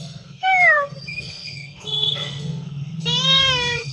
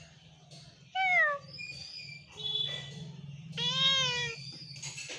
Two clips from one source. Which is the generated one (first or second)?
first